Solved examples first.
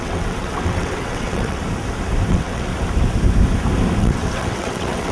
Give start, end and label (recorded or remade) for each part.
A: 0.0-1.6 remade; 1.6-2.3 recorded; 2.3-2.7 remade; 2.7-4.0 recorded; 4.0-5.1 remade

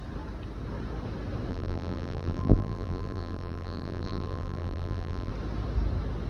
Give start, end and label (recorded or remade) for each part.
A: 0.0-1.5 recorded; 1.5-5.3 remade; 5.3-6.3 recorded

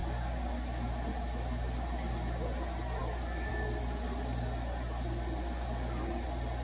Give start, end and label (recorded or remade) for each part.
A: 0.0-6.6 recorded

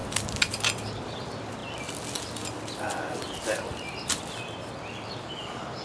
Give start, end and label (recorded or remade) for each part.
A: 0.0-5.8 recorded

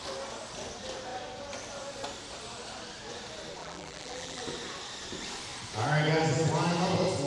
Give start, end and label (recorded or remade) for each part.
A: 0.0-3.6 recorded; 3.6-4.4 remade; 4.4-7.3 recorded

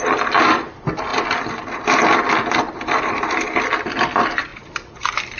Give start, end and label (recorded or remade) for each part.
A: 0.0-4.5 recorded; 4.5-5.4 remade

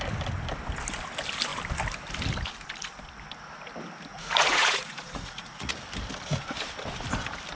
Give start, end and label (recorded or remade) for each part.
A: 0.0-4.1 recorded; 4.1-5.7 remade; 5.7-7.5 recorded